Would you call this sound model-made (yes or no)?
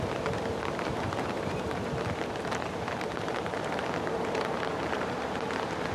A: yes